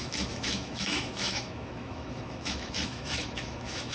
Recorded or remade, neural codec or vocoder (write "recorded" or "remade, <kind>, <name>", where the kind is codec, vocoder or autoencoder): remade, autoencoder, DAC-VAE